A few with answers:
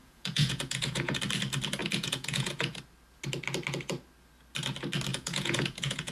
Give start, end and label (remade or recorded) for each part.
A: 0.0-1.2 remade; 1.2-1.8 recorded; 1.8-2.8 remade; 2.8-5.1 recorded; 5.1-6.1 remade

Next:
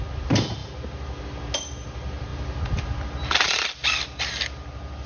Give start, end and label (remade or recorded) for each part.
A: 0.0-5.1 recorded

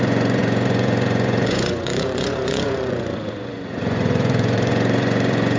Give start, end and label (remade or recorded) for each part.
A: 0.0-5.6 remade